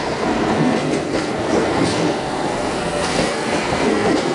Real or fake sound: fake